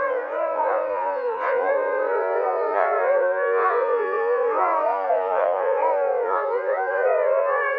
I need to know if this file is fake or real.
fake